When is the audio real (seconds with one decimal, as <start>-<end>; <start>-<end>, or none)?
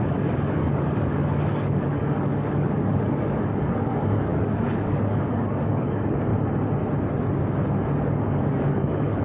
6.3-8.0